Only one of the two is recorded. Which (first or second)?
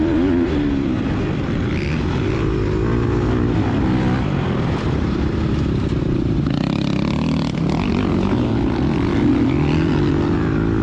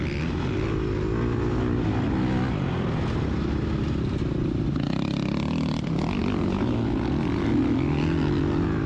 second